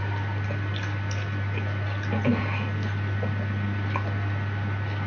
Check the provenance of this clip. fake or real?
real